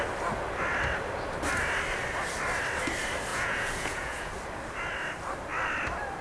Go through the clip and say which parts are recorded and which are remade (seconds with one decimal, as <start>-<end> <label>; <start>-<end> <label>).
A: 0.0-3.3 recorded; 3.3-4.3 remade; 4.3-6.2 recorded